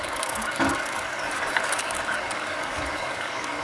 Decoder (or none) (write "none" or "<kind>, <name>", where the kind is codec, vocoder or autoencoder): codec, DAC